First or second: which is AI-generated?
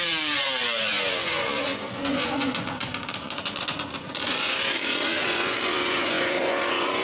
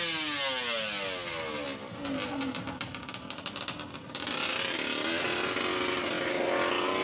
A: first